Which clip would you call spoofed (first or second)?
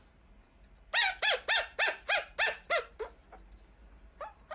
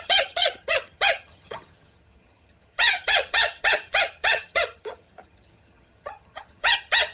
second